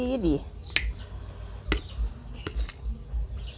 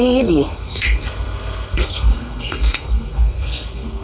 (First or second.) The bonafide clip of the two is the first